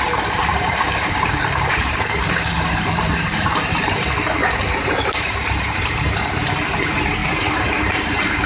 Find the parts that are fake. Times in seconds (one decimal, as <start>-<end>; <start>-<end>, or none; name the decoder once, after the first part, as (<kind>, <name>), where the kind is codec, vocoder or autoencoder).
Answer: 0.5-3.9 (vocoder, BigVGAN v2); 4.4-6.4; 7.2-8.5